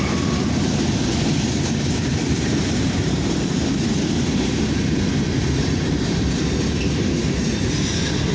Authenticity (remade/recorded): remade